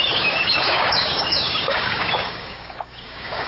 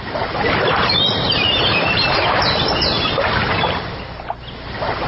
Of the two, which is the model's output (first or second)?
first